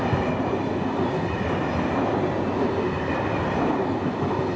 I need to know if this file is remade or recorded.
recorded